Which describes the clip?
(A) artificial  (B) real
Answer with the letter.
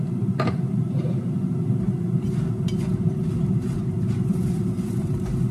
A